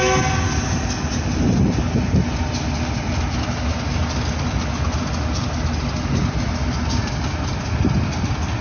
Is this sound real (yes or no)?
yes